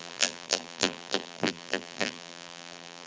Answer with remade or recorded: remade